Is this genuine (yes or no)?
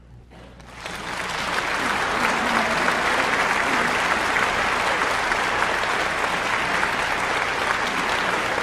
yes